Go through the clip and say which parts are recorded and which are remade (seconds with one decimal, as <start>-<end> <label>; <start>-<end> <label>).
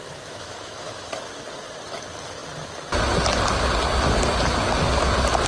0.0-1.2 remade; 1.2-5.5 recorded